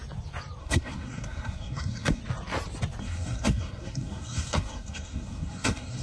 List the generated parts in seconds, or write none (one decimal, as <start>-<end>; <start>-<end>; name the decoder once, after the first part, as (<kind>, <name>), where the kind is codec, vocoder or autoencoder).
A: 0.6-2.2 (codec, SNAC); 3.0-6.0